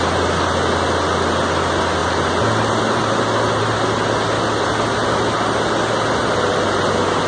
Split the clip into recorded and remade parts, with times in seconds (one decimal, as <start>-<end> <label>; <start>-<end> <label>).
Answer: 0.0-7.3 recorded